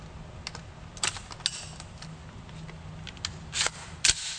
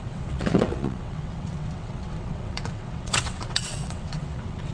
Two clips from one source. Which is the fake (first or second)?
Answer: second